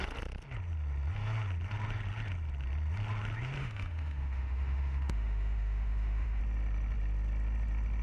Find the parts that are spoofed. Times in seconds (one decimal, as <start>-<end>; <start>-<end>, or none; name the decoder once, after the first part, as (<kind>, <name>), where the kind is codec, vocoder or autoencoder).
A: 3.6-6.4 (autoencoder, DAC-VAE)